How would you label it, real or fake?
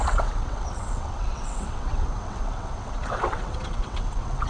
fake